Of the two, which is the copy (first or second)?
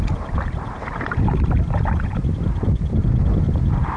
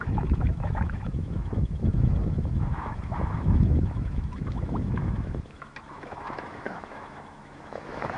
second